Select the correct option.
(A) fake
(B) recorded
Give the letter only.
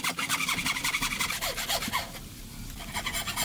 B